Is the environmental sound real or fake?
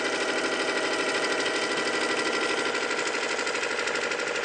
real